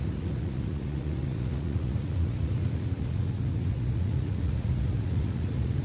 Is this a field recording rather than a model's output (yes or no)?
no